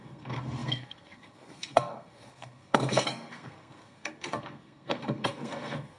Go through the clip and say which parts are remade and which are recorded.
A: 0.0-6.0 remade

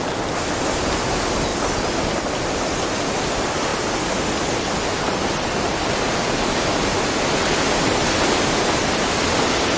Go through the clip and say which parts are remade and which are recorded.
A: 0.0-9.8 recorded

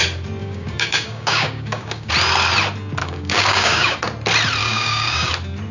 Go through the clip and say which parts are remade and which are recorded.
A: 0.0-0.4 recorded; 0.4-2.1 remade; 2.1-3.0 recorded; 3.0-4.0 remade; 4.0-4.6 recorded; 4.6-5.3 remade; 5.3-5.7 recorded